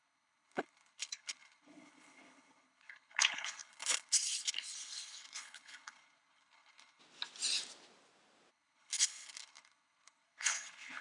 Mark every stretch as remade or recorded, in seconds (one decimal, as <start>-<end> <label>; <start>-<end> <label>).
0.0-7.0 remade; 7.0-8.5 recorded; 8.5-11.0 remade